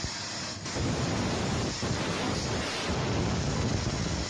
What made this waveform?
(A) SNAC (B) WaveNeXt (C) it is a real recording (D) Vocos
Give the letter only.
C